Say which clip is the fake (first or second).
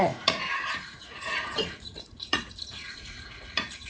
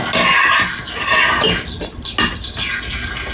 first